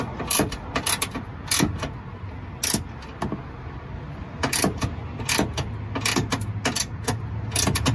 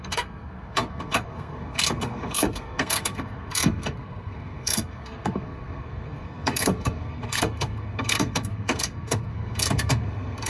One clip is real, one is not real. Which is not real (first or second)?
second